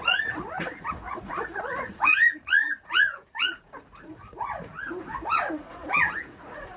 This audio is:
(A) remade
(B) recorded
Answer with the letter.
A